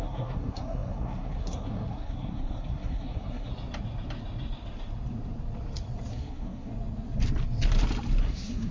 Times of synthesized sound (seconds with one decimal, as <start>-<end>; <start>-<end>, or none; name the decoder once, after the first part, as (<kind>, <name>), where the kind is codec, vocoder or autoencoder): 0.0-3.5 (codec, SNAC); 6.1-6.7; 8.2-8.7